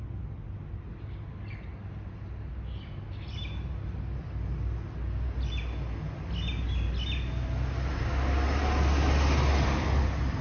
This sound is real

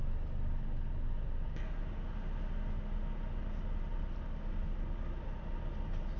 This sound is real